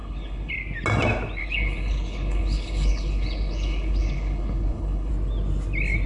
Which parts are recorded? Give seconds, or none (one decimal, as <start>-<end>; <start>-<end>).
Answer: 0.5-1.4; 5.1-6.1